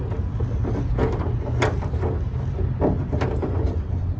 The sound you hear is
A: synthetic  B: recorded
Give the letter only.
B